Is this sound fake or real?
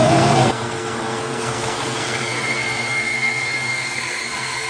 fake